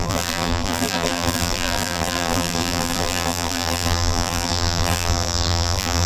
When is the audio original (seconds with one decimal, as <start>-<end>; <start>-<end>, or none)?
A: none

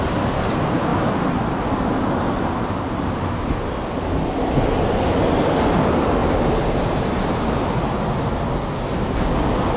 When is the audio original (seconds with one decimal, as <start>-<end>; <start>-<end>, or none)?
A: 0.0-6.2; 8.0-9.8